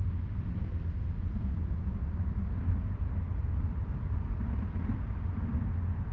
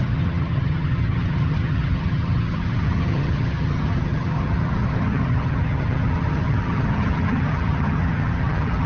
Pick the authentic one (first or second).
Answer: first